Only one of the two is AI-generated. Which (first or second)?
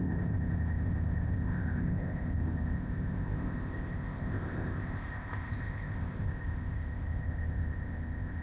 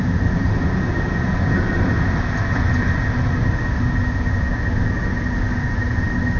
first